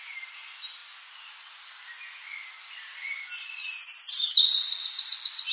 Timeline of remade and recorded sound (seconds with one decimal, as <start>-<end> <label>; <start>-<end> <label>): 0.0-5.5 recorded